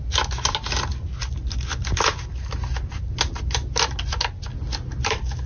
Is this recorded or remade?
recorded